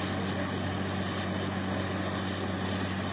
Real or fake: real